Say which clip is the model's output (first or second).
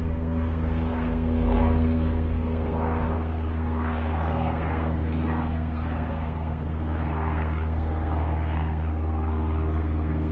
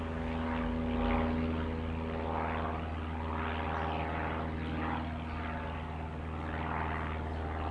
first